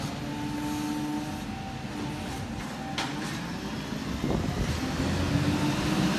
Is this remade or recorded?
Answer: recorded